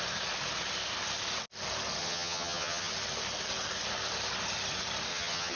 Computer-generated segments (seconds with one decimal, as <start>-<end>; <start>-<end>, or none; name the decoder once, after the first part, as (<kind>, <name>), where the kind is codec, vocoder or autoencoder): 2.0-2.9 (vocoder, HiFi-GAN); 5.1-5.6